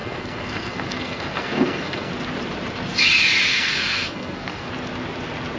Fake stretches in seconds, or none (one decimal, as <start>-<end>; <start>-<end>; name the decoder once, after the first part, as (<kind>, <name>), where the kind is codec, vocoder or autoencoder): 0.0-2.1 (codec, SNAC); 3.5-4.7